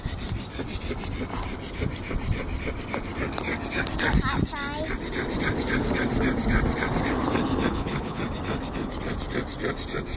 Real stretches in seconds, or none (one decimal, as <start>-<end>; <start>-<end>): 0.0-7.7; 8.2-10.2